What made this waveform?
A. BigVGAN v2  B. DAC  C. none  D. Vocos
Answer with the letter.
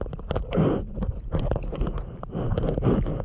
C